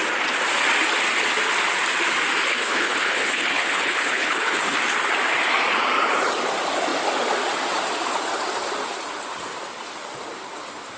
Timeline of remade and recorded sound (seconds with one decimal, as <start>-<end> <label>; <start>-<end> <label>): 0.0-2.5 recorded; 2.5-4.8 remade; 4.8-11.0 recorded